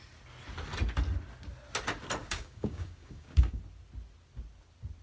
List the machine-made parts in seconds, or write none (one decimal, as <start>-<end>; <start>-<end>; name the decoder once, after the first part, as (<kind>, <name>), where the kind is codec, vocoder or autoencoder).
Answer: 2.2-3.6 (codec, DAC)